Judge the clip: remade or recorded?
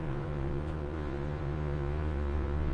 remade